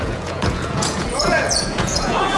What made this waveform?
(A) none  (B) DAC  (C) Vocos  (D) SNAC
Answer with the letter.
C